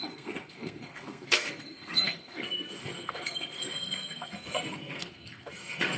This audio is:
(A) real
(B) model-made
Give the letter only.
B